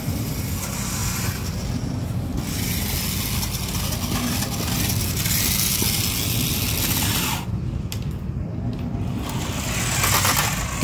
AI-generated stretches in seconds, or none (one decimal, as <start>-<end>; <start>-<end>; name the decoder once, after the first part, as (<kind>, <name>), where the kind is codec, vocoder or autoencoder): none